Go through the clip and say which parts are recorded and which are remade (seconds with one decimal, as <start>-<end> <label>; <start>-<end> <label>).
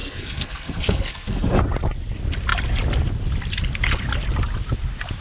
0.0-1.6 remade; 1.6-5.2 recorded